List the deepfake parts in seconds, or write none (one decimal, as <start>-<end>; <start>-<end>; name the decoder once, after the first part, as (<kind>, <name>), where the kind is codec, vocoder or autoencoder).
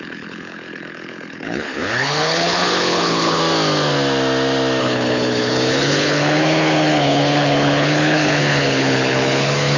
0.0-3.4 (codec, HILCodec); 4.8-9.8